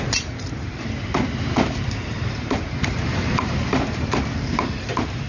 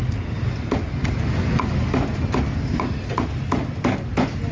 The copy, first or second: first